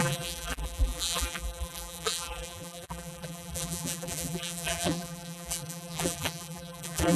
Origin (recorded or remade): remade